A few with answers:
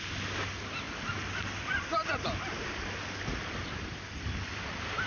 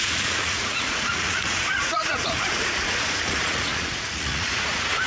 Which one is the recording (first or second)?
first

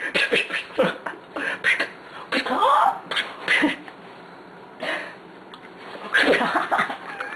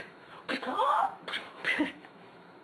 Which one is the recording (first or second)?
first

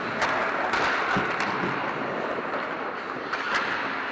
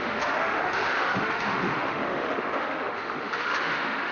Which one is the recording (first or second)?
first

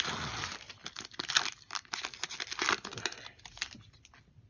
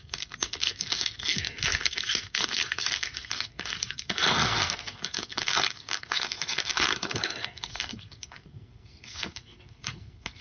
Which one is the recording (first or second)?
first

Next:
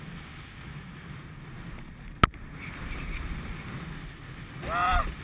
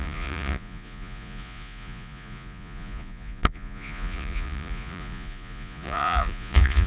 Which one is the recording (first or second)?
first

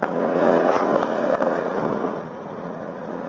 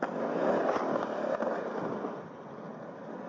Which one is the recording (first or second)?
second